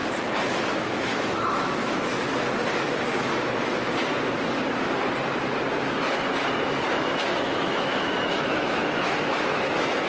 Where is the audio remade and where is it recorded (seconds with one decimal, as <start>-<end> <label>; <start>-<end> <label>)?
0.0-0.7 recorded; 0.7-2.1 remade; 2.1-6.9 recorded; 6.9-10.1 remade